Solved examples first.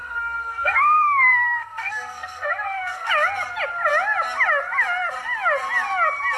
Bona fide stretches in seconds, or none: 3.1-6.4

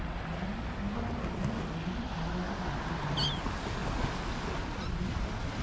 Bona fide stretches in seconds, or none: 0.0-5.6

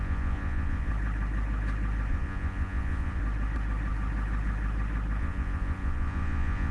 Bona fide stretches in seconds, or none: 0.9-2.1; 3.2-5.2

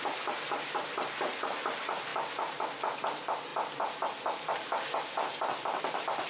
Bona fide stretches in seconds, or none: 2.1-3.0